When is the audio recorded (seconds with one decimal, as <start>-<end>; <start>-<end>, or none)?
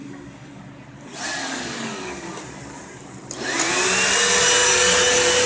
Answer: 0.6-1.4; 2.4-5.5